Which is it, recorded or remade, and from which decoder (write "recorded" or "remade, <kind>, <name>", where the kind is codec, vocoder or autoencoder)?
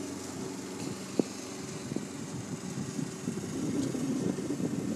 recorded